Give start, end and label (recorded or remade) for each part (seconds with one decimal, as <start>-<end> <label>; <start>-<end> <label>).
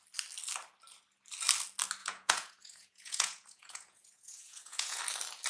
0.0-2.0 recorded; 2.0-5.0 remade; 5.0-5.5 recorded